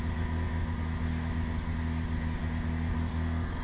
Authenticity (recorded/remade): recorded